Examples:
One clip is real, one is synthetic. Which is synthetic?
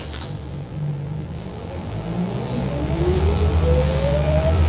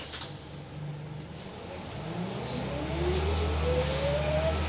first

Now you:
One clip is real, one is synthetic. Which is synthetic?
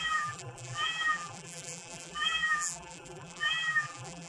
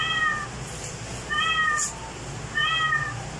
first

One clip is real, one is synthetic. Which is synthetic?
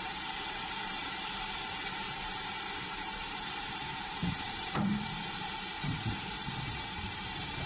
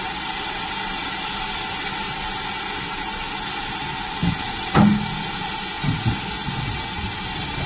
first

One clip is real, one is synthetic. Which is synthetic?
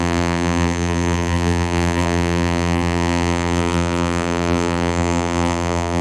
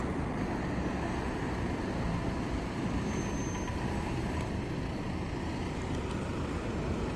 first